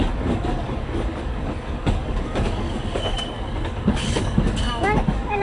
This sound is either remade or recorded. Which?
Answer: remade